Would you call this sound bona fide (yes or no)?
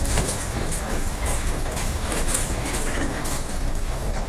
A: no